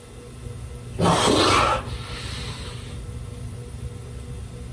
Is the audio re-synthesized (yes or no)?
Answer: no